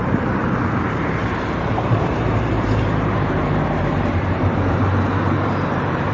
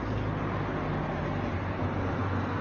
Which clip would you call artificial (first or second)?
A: first